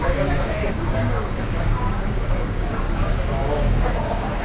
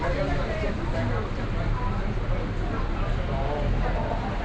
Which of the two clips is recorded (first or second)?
second